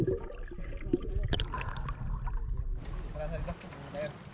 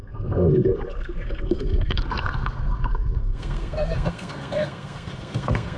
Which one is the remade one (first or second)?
second